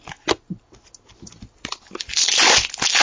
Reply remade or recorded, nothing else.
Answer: recorded